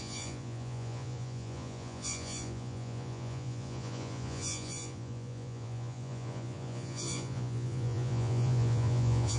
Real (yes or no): no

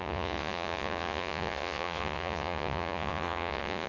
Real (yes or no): no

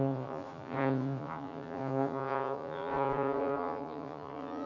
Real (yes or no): no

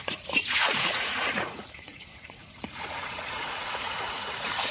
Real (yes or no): no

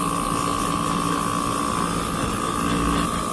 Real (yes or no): yes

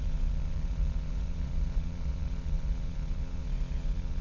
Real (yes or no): no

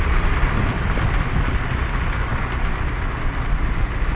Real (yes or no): yes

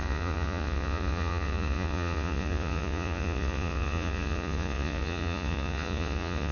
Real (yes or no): no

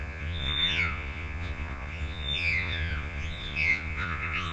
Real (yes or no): no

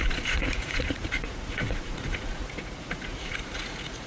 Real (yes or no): no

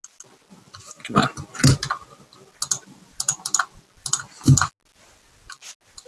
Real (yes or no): yes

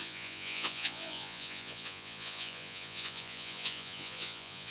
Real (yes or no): no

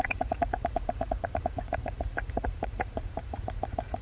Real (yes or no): no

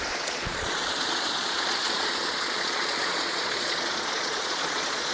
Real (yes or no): no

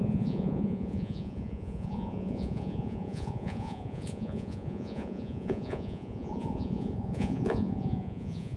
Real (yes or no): no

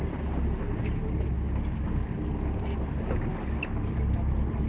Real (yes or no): yes